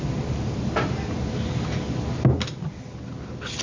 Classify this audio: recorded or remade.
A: recorded